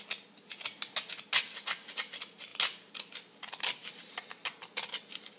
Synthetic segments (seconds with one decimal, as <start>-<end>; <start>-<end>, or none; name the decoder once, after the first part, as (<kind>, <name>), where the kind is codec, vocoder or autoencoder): none